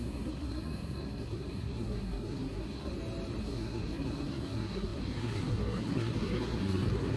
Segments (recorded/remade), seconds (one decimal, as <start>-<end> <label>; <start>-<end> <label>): 0.0-2.9 remade; 2.9-3.4 recorded; 3.4-7.2 remade